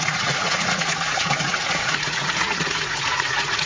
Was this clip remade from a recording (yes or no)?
yes